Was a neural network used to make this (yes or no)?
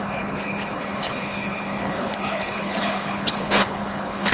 yes